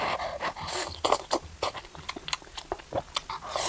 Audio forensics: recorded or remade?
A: recorded